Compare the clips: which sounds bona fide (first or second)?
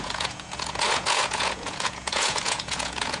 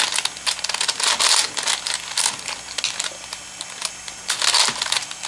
second